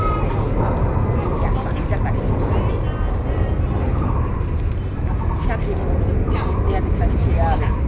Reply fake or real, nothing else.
real